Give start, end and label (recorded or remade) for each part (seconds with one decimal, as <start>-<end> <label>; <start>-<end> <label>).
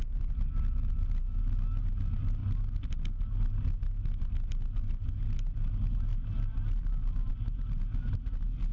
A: 0.0-8.7 recorded